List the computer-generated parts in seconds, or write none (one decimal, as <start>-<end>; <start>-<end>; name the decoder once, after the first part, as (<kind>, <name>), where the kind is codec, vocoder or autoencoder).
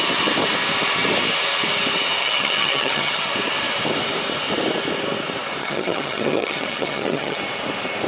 2.2-3.3 (vocoder, HiFi-GAN); 5.6-7.4